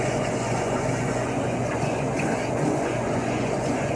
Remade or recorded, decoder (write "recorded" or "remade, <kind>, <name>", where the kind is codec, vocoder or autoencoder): remade, vocoder, Vocos